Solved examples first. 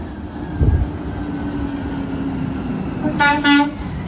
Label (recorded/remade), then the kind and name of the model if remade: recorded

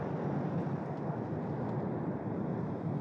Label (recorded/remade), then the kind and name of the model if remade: recorded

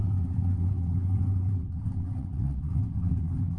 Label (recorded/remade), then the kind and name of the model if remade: remade, vocoder, WaveNeXt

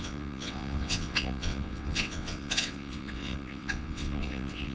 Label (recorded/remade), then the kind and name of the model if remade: remade, vocoder, WaveNeXt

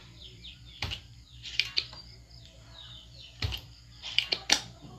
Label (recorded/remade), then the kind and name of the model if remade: remade, vocoder, BigVGAN v2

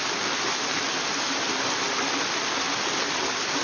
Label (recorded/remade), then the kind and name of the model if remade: recorded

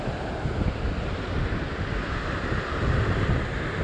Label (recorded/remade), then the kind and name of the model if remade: recorded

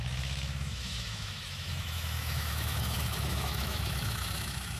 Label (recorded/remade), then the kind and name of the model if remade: remade, autoencoder, DAC-VAE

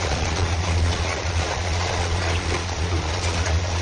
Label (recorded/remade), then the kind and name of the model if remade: remade, vocoder, Vocos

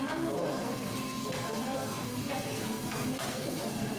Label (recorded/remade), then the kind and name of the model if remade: remade, codec, SNAC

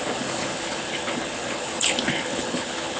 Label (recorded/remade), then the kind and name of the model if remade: remade, codec, HILCodec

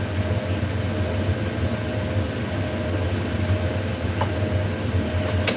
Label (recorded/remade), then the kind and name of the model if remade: recorded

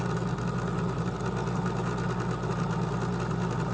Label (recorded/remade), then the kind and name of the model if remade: recorded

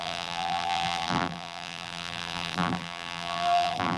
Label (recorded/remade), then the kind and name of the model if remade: remade, vocoder, BigVGAN v2